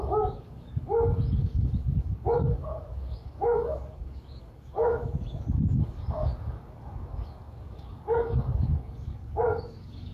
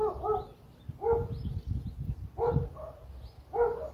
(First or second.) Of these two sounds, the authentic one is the second